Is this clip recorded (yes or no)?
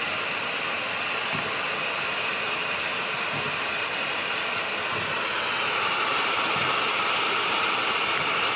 yes